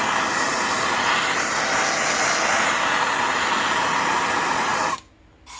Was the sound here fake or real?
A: real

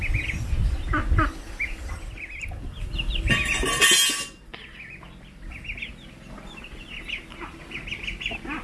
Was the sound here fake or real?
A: real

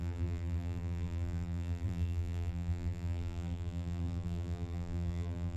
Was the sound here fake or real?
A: fake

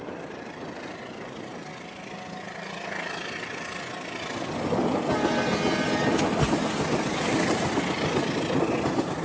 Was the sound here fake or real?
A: real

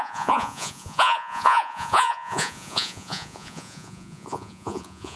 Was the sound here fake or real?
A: fake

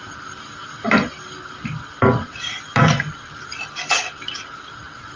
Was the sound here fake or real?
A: fake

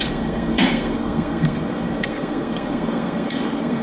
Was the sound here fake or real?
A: fake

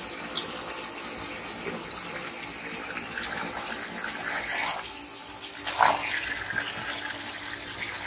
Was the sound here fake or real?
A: real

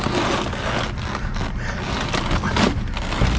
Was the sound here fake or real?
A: real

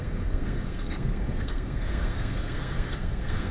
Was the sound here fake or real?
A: fake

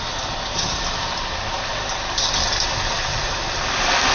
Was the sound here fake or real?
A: real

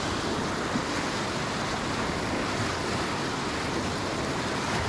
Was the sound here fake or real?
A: real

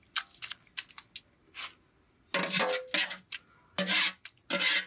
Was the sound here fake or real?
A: real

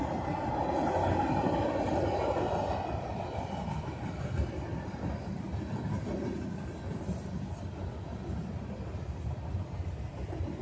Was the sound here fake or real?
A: real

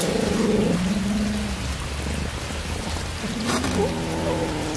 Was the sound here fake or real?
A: real